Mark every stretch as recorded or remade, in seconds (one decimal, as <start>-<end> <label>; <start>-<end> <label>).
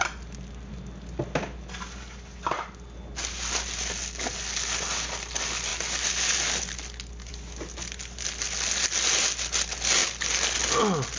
0.0-11.2 recorded